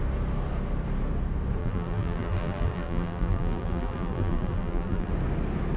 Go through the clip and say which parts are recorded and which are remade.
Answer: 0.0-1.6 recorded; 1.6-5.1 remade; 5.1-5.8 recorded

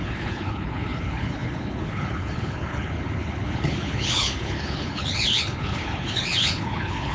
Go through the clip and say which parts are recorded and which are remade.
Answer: 0.0-7.1 remade

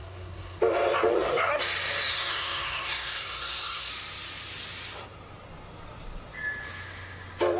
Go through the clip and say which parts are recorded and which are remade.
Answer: 0.0-0.6 remade; 0.6-1.1 recorded; 1.1-1.6 remade; 1.6-2.1 recorded; 2.1-3.9 remade; 3.9-7.6 recorded